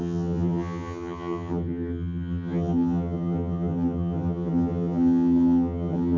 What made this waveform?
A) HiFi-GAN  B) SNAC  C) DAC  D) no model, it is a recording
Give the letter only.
A